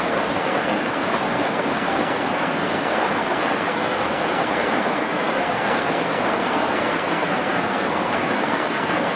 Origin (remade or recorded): remade